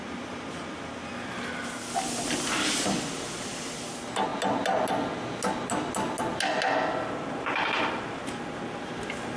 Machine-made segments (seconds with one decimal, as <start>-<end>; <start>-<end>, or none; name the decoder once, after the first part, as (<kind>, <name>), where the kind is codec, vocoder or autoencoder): none